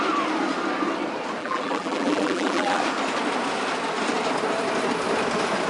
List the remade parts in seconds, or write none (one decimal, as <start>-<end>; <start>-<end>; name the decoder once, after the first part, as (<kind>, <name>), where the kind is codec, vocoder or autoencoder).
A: 1.4-2.8 (vocoder, BigVGAN v2)